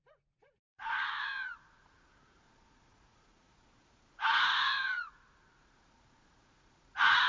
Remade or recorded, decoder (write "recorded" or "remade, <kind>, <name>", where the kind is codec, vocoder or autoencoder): remade, vocoder, Vocos